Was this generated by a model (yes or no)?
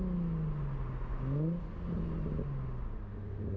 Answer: no